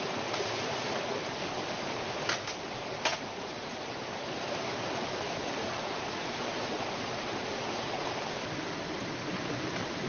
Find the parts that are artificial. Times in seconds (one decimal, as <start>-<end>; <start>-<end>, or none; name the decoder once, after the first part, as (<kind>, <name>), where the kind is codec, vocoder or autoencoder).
3.1-3.8 (vocoder, Vocos); 5.4-6.4; 7.1-8.1